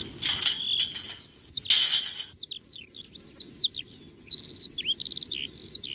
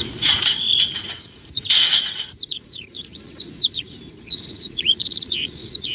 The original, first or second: first